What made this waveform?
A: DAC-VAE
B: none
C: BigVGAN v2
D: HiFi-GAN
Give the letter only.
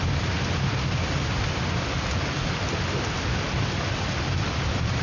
B